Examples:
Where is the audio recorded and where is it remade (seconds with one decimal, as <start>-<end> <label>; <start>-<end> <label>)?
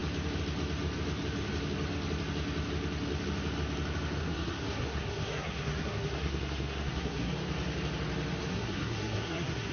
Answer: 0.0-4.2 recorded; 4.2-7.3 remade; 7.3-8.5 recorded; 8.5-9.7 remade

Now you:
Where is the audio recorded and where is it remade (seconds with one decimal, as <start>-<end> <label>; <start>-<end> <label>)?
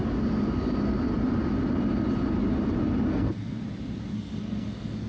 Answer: 0.0-3.1 recorded; 3.1-3.6 remade; 3.6-4.1 recorded; 4.1-5.1 remade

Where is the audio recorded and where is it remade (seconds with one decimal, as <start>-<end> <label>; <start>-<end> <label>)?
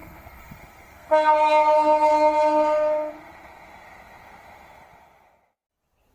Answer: 0.0-3.1 remade; 3.1-6.1 recorded